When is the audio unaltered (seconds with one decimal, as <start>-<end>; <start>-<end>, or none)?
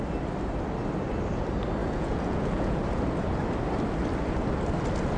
0.0-1.8; 2.8-5.2